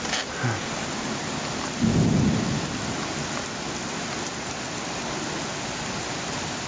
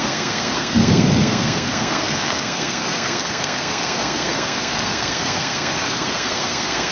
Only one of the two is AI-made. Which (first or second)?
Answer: second